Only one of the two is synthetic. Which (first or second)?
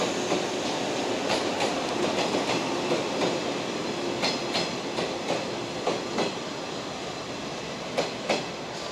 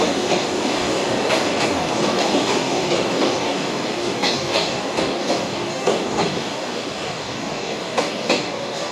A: second